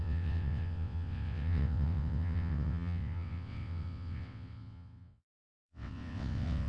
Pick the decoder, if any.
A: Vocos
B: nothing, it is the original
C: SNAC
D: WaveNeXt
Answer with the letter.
D